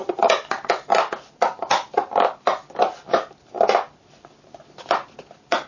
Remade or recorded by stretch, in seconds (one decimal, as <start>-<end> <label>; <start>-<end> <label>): 0.0-5.7 recorded

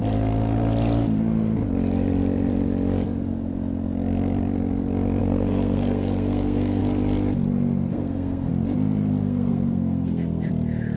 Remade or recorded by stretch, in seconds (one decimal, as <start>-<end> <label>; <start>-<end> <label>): 0.0-5.2 recorded; 5.2-6.8 remade; 6.8-7.9 recorded; 7.9-8.5 remade; 8.5-9.2 recorded; 9.2-10.5 remade; 10.5-11.0 recorded

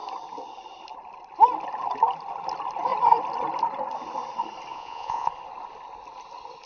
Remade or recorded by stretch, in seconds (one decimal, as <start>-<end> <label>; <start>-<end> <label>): 0.0-4.7 recorded; 4.7-5.3 remade; 5.3-6.7 recorded

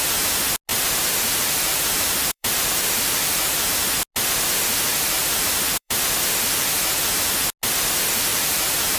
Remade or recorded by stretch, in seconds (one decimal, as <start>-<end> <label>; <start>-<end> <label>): 0.0-0.7 recorded; 0.7-3.7 remade; 3.7-4.9 recorded; 4.9-6.0 remade; 6.0-8.3 recorded; 8.3-9.0 remade

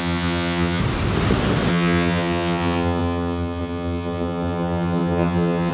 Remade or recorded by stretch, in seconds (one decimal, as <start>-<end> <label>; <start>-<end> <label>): 0.0-0.8 remade; 0.8-1.7 recorded; 1.7-5.7 remade